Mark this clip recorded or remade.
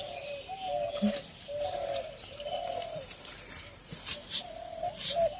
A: recorded